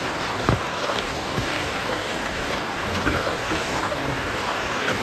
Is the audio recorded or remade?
remade